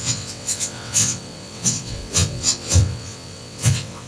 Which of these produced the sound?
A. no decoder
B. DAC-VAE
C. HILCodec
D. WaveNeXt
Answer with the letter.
D